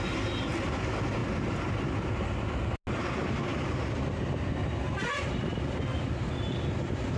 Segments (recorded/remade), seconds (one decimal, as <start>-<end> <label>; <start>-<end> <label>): 0.0-7.2 recorded

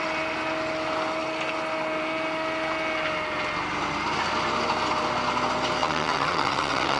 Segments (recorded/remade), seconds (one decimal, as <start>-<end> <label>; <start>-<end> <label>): 0.0-5.8 recorded; 5.8-7.0 remade

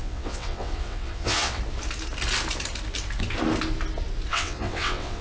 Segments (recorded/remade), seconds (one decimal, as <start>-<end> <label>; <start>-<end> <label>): 0.0-1.6 remade; 1.6-4.3 recorded; 4.3-5.2 remade

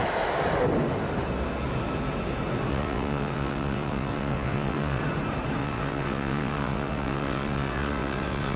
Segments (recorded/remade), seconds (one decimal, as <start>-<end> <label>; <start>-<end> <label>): 0.0-2.7 recorded; 2.7-5.0 remade; 5.0-5.6 recorded; 5.6-8.6 remade

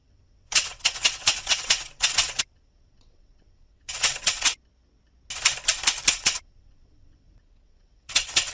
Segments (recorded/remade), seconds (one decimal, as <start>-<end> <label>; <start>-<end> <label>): 0.0-4.5 remade; 4.5-6.1 recorded; 6.1-8.5 remade

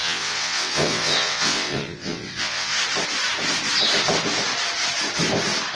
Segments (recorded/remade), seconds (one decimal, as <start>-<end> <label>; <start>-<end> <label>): 0.0-2.8 remade; 2.8-5.7 recorded